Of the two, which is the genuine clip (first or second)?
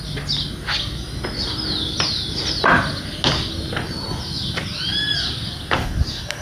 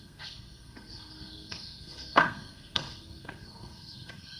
first